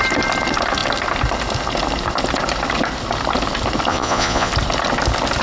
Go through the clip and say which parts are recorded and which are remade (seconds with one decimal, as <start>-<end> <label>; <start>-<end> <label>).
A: 0.0-3.9 recorded; 3.9-4.5 remade; 4.5-5.4 recorded